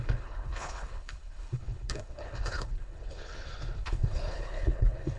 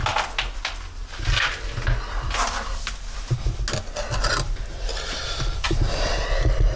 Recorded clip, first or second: second